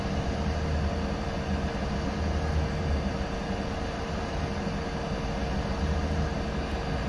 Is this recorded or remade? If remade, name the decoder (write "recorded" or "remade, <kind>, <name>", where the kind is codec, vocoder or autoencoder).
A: recorded